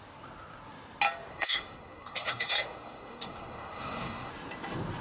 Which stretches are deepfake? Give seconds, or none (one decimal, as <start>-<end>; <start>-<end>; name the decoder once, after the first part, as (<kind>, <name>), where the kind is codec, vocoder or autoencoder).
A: 1.3-4.3 (codec, SNAC)